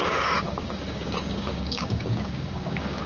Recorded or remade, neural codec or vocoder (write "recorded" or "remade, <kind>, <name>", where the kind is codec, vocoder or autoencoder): remade, codec, DAC